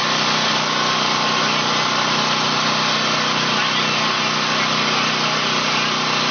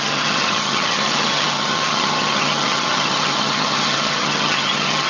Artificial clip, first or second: second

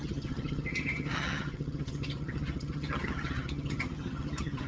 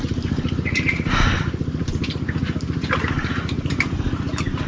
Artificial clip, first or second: first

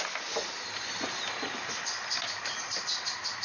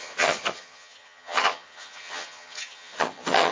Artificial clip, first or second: second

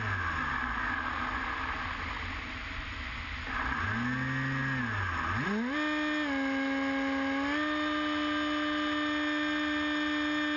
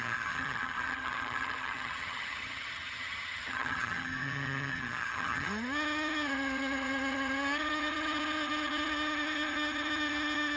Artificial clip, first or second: second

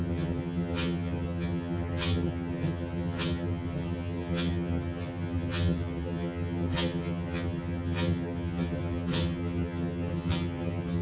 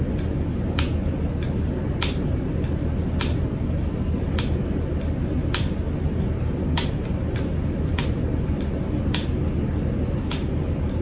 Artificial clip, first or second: first